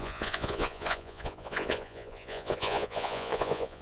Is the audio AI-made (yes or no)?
yes